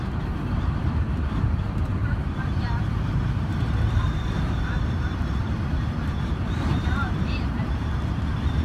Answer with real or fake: fake